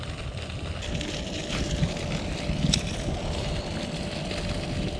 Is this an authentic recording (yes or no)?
yes